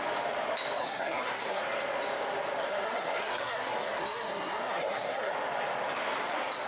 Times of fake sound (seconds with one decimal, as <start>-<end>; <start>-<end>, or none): 0.8-1.6; 2.7-5.3